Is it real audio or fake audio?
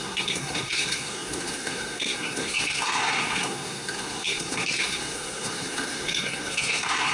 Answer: fake